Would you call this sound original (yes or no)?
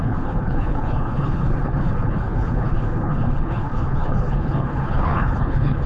no